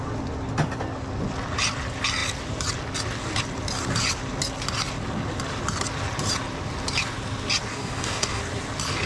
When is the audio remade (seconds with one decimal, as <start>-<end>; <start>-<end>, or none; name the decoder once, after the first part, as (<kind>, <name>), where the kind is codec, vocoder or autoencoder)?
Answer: 7.7-8.4 (codec, DAC)